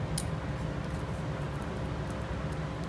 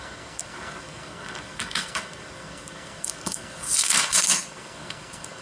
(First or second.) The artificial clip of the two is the second